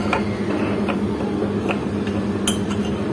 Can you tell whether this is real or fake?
real